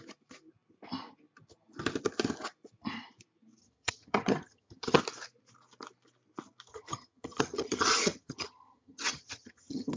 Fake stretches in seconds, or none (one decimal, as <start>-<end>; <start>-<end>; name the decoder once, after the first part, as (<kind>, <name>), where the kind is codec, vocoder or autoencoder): 3.6-5.0 (vocoder, HiFi-GAN); 6.7-10.0